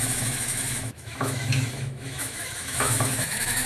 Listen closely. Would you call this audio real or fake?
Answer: fake